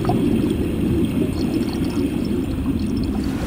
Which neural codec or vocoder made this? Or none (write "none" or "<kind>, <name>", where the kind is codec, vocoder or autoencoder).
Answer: vocoder, BigVGAN v2